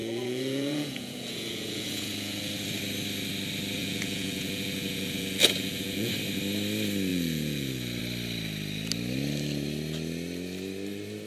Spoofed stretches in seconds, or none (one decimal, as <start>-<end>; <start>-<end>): 0.0-2.5; 3.8-6.1; 7.1-8.0